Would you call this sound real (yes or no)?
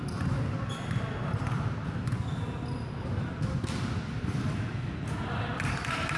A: yes